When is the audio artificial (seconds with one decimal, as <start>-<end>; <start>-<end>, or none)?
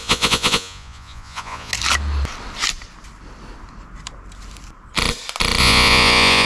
0.0-1.7; 5.6-6.5